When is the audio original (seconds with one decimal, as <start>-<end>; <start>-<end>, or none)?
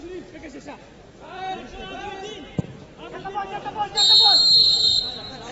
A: 0.0-4.6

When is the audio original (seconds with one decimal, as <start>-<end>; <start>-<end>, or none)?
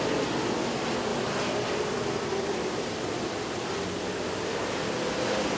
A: 0.0-1.1; 2.5-5.6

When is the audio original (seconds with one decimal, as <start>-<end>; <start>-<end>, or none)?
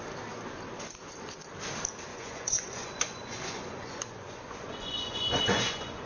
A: 0.0-2.1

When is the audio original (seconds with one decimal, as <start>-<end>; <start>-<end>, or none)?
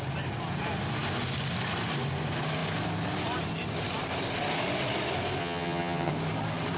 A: 0.0-5.4; 6.1-6.8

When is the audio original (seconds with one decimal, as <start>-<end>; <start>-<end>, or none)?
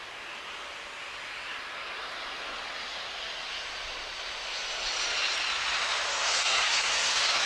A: 0.0-6.1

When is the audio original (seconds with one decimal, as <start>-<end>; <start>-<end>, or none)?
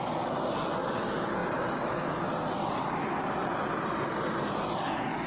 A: 0.0-5.3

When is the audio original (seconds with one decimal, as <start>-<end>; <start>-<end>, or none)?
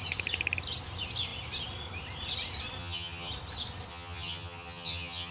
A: 0.0-2.8; 3.3-3.9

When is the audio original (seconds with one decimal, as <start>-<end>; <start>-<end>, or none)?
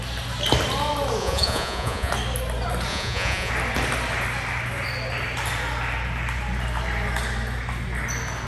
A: 0.0-1.2; 2.1-2.9; 3.5-8.5